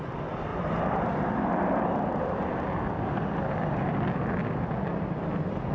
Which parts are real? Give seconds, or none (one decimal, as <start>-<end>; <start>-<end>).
0.0-5.7